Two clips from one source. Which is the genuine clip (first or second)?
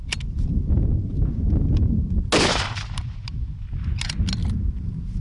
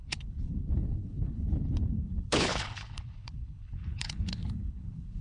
first